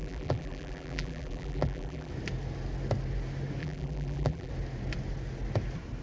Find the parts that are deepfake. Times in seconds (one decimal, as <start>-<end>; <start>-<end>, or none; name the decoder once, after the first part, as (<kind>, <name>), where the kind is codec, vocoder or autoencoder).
0.0-2.1 (vocoder, BigVGAN v2); 3.6-4.5